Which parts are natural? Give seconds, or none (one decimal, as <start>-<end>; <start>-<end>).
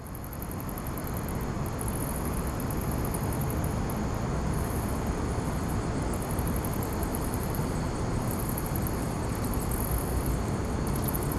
0.0-7.1; 7.9-11.4